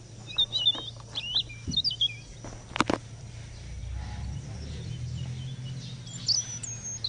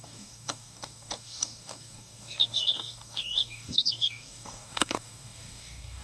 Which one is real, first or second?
first